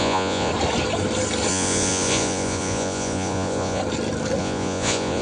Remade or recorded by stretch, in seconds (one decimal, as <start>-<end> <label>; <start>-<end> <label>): 0.0-0.5 remade; 0.5-1.5 recorded; 1.5-3.8 remade; 3.8-4.4 recorded; 4.4-5.2 remade